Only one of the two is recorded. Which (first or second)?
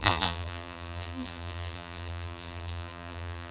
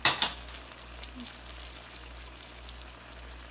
second